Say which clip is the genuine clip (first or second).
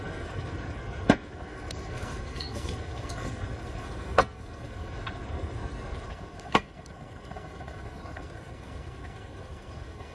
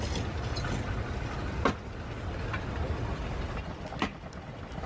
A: second